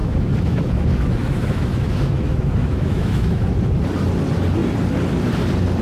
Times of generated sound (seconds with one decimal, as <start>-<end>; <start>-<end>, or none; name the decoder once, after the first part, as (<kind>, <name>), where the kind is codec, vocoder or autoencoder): 0.0-3.5 (autoencoder, DAC-VAE)